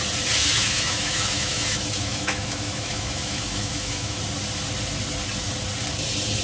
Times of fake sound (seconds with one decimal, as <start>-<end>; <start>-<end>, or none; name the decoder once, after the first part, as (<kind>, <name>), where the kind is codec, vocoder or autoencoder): 0.4-4.2 (autoencoder, DAC-VAE)